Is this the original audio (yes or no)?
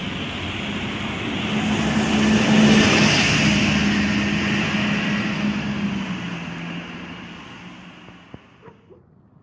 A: yes